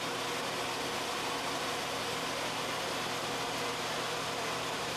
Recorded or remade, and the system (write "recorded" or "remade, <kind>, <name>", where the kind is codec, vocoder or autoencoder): recorded